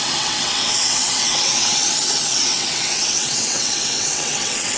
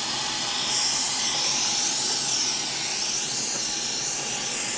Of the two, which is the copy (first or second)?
first